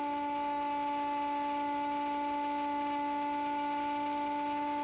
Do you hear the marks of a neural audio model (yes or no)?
no